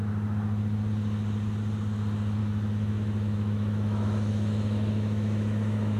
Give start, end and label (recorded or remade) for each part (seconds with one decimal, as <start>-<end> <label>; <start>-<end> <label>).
0.0-2.4 recorded; 2.4-6.0 remade